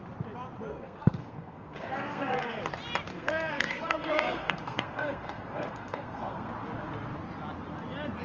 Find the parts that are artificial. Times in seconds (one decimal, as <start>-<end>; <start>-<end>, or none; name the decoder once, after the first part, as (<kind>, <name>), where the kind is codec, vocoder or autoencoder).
0.7-2.6 (codec, SNAC); 3.1-6.5